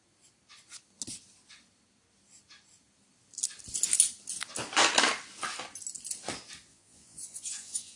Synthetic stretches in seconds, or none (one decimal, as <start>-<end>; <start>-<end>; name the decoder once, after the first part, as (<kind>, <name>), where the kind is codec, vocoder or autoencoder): 6.7-8.0 (vocoder, Vocos)